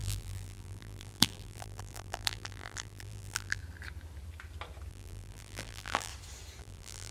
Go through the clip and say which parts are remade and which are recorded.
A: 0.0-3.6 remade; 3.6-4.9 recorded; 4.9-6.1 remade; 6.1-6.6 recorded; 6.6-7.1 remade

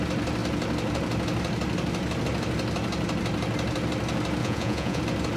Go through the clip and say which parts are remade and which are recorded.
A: 0.0-4.4 recorded; 4.4-5.0 remade; 5.0-5.4 recorded

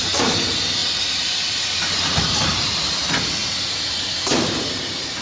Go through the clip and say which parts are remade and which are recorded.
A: 0.0-5.2 remade

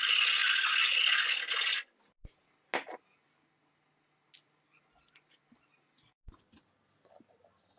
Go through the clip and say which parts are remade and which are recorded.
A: 0.0-7.8 recorded